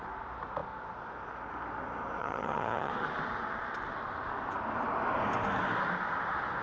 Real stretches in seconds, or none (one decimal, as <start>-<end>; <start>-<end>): 0.0-2.2; 2.9-6.6